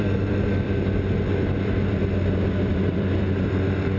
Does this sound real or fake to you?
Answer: fake